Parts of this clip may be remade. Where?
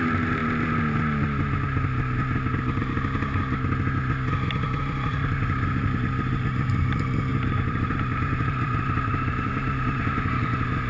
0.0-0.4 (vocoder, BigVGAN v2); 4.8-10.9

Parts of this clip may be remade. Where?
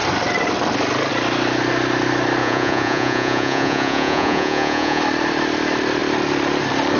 2.4-5.0 (vocoder, Vocos)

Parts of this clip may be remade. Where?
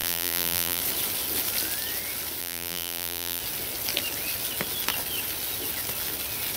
0.0-0.8 (vocoder, BigVGAN v2); 2.4-3.4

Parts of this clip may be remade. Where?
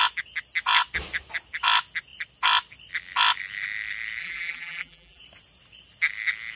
4.2-5.2 (vocoder, BigVGAN v2)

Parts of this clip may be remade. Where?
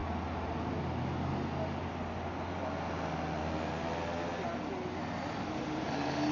none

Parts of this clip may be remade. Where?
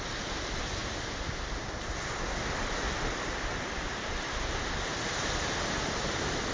none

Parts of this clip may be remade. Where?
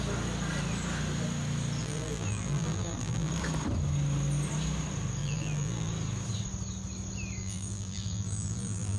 1.8-3.3 (vocoder, BigVGAN v2); 5.2-5.9; 7.4-9.0